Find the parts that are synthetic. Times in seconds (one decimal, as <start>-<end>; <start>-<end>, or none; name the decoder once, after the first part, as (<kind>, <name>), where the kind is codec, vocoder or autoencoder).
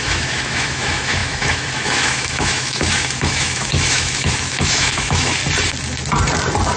0.0-5.4 (autoencoder, DAC-VAE)